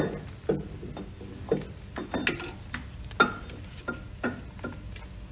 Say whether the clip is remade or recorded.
recorded